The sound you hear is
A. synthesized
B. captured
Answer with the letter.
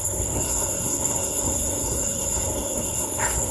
A